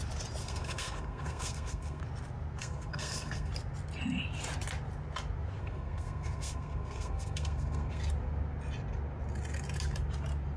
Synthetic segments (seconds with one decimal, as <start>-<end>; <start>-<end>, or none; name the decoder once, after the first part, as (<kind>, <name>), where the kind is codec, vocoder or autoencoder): 0.4-2.0 (codec, SNAC); 2.6-3.5; 5.6-8.0